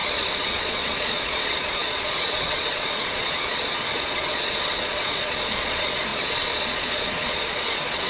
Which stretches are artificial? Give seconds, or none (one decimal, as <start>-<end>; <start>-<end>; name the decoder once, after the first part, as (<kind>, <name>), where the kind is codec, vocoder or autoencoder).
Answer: 0.0-8.1 (vocoder, Vocos)